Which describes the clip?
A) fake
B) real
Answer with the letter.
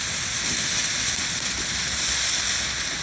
B